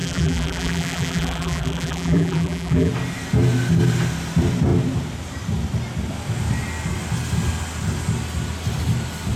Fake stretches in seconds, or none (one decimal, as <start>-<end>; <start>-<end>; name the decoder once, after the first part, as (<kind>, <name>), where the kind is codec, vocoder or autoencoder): 0.0-2.9 (vocoder, BigVGAN v2)